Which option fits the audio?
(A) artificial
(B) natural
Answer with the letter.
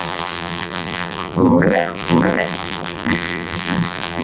A